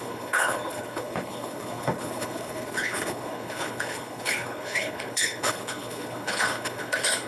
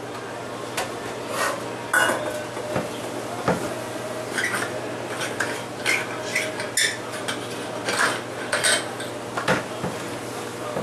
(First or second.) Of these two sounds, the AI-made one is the first